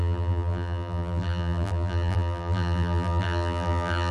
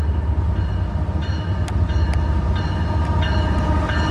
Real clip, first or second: second